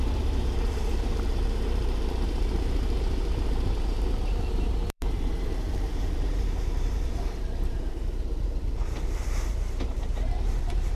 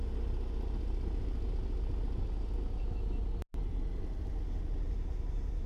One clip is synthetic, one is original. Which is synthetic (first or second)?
first